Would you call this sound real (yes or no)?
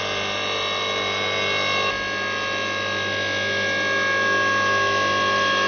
yes